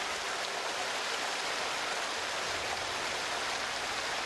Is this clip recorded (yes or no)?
yes